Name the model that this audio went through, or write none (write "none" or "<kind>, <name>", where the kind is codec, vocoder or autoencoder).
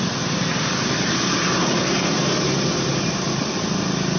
none